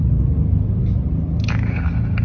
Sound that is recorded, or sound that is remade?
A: recorded